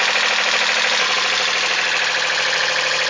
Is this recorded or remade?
recorded